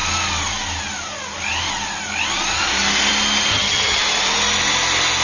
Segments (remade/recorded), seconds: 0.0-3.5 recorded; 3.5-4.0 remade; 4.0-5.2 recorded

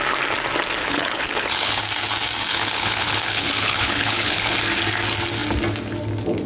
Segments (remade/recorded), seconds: 0.0-0.8 recorded; 0.8-1.8 remade; 1.8-2.5 recorded; 2.5-4.6 remade; 4.6-6.5 recorded

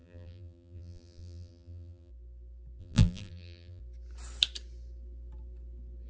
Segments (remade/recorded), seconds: 0.0-2.1 remade; 2.1-2.8 recorded; 2.8-3.8 remade; 3.8-6.1 recorded

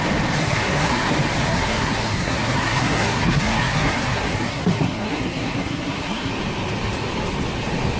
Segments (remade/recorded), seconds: 0.0-0.4 recorded; 0.4-1.1 remade; 1.1-1.5 recorded; 1.5-6.3 remade; 6.3-8.0 recorded

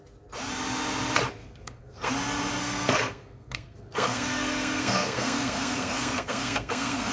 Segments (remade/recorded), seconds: 0.0-1.4 recorded; 1.4-2.1 remade; 2.1-2.6 recorded; 2.6-7.1 remade

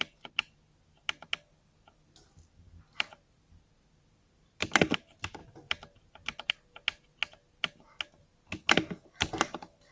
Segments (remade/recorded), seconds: 0.0-9.9 recorded